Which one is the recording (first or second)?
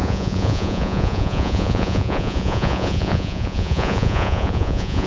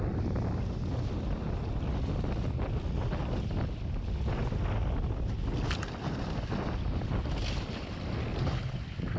second